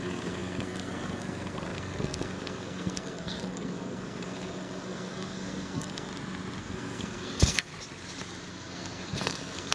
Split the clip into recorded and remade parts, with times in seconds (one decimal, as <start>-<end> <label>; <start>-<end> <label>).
0.0-6.1 remade; 6.1-6.6 recorded; 6.6-7.7 remade; 7.7-8.5 recorded; 8.5-9.7 remade